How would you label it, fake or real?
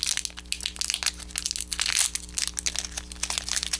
real